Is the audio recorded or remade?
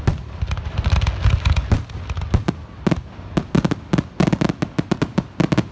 recorded